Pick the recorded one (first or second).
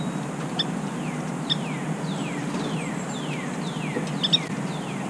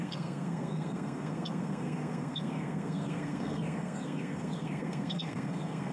first